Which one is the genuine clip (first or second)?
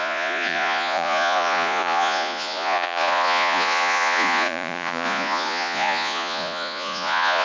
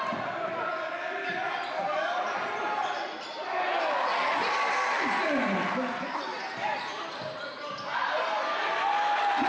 second